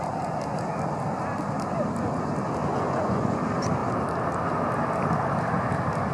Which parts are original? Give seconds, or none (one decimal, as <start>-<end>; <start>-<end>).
0.0-2.6; 3.4-6.1